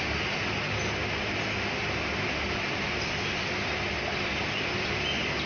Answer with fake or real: real